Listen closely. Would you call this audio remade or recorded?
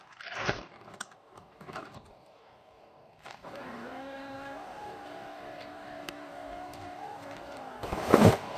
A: remade